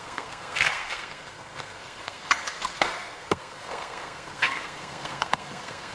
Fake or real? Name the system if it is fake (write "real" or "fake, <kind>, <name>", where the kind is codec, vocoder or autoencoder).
fake, codec, SNAC